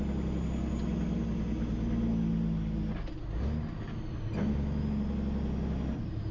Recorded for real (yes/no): yes